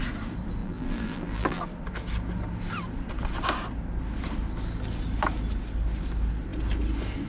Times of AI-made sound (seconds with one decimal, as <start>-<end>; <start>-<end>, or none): 0.6-1.6